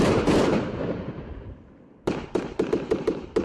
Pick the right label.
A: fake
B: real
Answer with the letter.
A